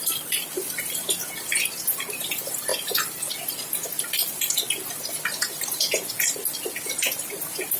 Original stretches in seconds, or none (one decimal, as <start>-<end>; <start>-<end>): 0.0-7.8